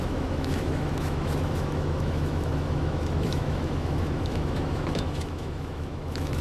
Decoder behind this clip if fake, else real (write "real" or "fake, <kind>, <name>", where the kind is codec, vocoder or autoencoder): fake, autoencoder, DAC-VAE